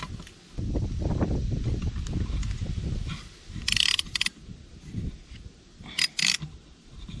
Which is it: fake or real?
real